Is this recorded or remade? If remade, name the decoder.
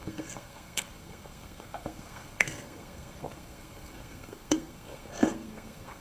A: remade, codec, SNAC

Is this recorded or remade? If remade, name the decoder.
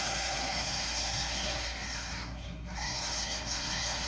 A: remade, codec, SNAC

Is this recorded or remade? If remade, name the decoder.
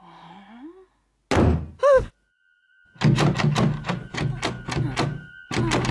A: recorded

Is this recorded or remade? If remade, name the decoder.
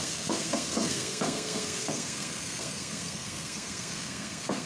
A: remade, codec, SNAC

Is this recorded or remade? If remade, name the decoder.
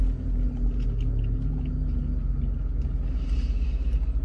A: recorded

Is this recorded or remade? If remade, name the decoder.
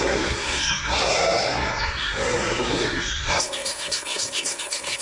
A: remade, codec, SNAC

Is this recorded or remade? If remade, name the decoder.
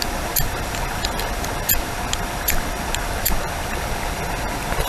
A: recorded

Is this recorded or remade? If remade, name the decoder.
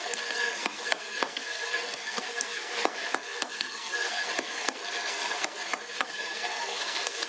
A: remade, codec, SNAC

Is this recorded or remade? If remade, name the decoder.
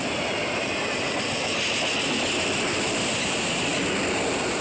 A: recorded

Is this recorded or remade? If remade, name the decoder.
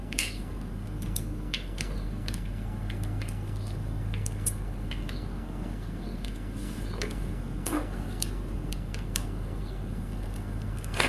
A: remade, codec, SNAC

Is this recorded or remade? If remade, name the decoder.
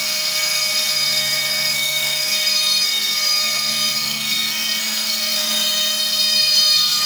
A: remade, codec, SNAC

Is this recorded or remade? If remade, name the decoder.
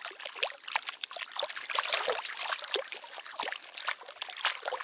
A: recorded